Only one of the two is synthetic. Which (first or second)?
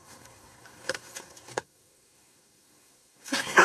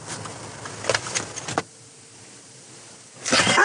first